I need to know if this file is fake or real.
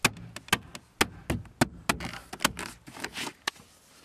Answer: real